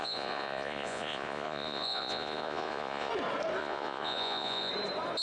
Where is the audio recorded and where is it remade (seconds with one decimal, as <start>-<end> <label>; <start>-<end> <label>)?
0.0-3.1 remade; 3.1-3.6 recorded; 3.6-4.7 remade; 4.7-5.2 recorded